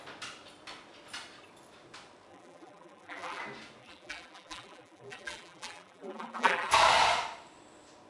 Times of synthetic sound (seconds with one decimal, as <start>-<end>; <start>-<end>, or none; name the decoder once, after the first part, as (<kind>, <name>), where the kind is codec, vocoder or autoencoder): 2.3-3.4 (vocoder, BigVGAN v2); 3.8-6.7